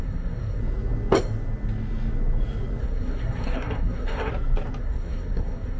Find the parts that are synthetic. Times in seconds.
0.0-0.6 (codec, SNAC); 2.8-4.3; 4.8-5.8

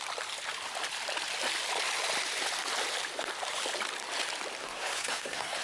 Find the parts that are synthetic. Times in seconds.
4.6-5.6 (codec, SNAC)

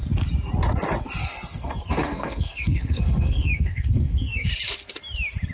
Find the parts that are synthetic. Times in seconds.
1.2-4.5 (codec, SNAC)

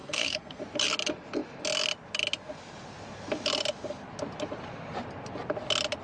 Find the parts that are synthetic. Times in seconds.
0.0-0.6 (codec, SNAC)

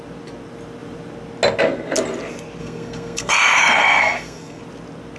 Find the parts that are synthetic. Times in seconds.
2.6-3.3 (codec, SNAC); 3.8-4.6

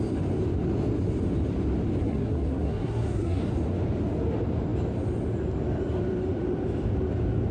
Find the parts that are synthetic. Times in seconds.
2.0-3.4 (codec, SNAC)

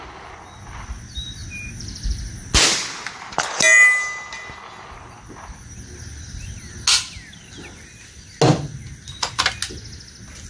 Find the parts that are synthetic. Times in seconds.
none